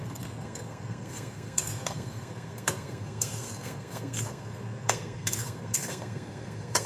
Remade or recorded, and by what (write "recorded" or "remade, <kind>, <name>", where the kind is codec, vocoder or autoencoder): remade, codec, SNAC